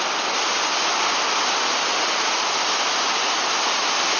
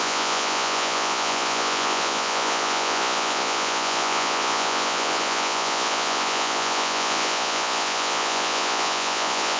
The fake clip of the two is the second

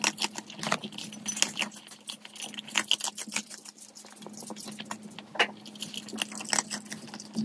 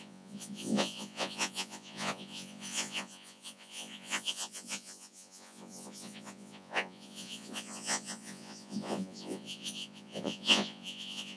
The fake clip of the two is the second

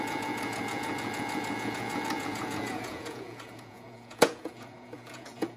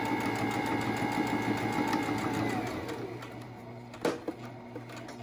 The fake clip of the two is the first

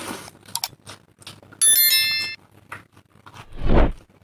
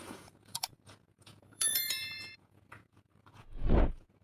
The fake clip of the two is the second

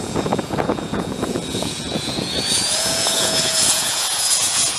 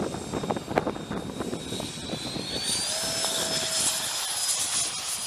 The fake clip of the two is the first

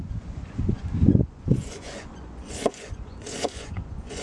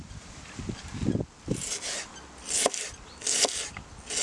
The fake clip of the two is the first